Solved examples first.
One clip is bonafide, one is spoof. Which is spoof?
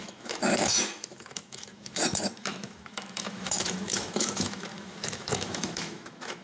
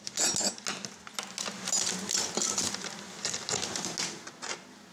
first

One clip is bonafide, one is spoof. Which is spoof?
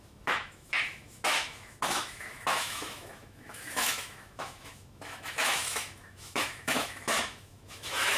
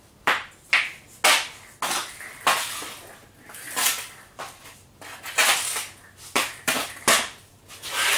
first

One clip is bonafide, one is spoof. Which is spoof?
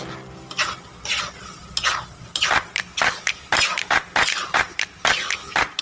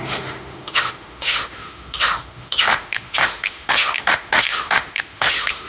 second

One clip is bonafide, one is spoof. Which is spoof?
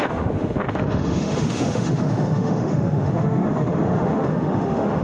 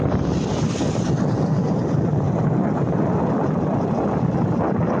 first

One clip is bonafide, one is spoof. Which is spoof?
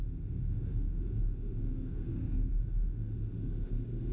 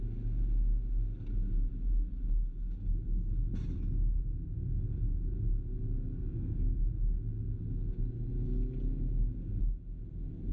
first